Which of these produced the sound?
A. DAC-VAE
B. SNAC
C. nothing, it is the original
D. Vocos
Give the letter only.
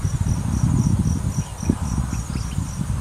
C